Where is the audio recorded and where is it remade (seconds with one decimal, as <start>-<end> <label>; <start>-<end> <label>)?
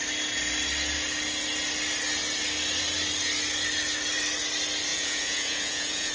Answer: 0.0-4.9 recorded; 4.9-6.1 remade